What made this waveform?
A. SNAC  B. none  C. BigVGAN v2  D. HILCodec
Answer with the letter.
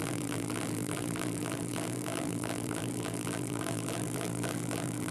C